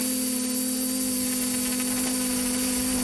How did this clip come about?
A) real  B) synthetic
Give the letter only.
A